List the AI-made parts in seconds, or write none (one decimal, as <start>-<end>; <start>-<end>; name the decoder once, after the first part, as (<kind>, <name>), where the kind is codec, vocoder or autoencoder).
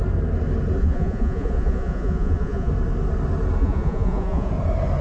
0.8-2.7 (vocoder, Vocos); 3.6-4.5